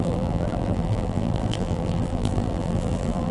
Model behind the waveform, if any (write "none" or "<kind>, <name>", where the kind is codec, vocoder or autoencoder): vocoder, BigVGAN v2